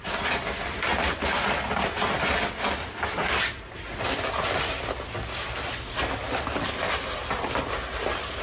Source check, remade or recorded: recorded